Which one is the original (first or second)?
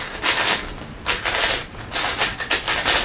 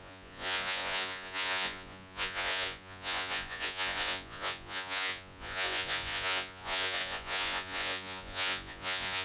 first